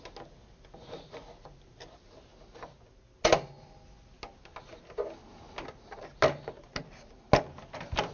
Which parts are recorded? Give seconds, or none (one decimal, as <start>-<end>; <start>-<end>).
0.0-8.1